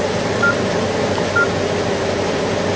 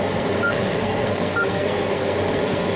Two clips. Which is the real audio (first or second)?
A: first